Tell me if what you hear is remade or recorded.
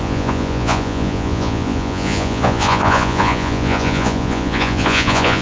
remade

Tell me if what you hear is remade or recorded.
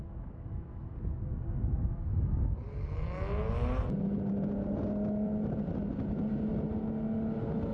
recorded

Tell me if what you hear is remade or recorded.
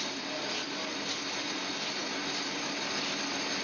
recorded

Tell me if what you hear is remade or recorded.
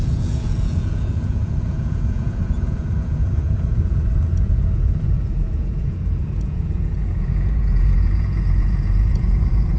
remade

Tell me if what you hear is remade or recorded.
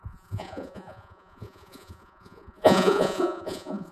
remade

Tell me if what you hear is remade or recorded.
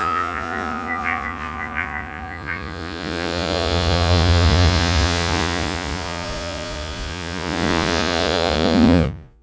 remade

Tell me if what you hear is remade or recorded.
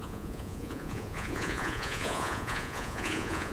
remade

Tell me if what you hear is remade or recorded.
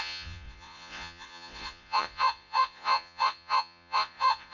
remade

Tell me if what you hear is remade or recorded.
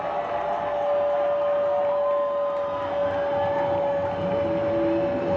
recorded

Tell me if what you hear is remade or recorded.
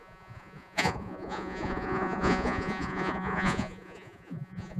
remade